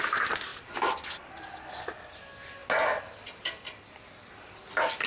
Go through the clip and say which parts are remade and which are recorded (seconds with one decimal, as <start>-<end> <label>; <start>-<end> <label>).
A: 0.0-5.1 recorded